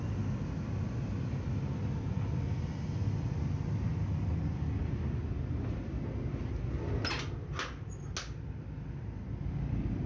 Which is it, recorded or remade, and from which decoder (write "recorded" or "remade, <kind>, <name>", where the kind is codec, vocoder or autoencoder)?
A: recorded